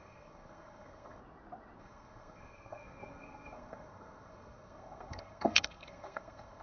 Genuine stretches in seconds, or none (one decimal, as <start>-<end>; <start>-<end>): 1.2-1.8